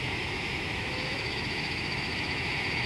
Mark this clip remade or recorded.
remade